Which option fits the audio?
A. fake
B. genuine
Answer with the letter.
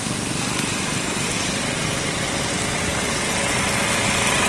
B